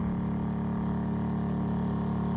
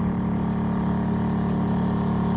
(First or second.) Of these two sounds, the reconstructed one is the second